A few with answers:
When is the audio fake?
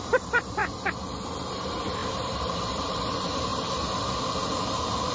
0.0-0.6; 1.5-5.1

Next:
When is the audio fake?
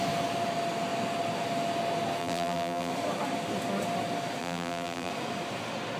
2.2-2.9; 4.4-5.1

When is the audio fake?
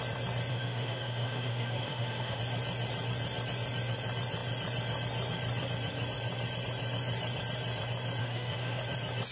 0.5-2.4; 8.2-8.8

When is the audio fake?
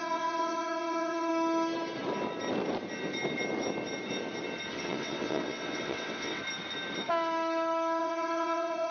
0.0-1.3; 4.7-6.4; 8.0-8.9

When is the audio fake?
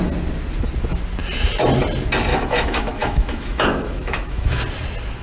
2.3-4.6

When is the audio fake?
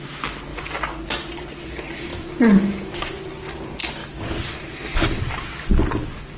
2.1-3.1